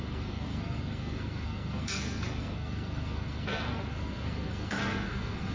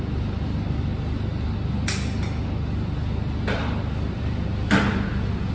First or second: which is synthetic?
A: first